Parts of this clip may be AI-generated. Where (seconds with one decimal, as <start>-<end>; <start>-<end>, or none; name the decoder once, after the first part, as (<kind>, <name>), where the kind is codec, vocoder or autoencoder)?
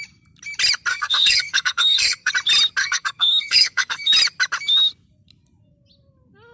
0.9-2.3 (codec, SNAC); 2.8-4.1